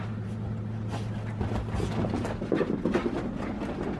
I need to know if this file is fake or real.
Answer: real